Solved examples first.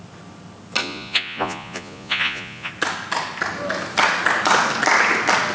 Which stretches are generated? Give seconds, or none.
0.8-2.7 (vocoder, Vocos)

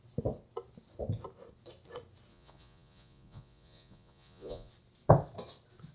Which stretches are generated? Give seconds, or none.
2.3-4.7 (vocoder, Vocos)

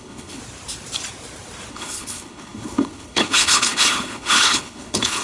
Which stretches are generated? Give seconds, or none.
0.0-0.4 (codec, HILCodec); 1.7-5.2

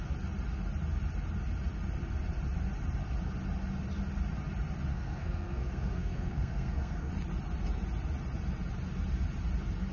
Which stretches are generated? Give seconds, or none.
4.9-7.1 (codec, SNAC)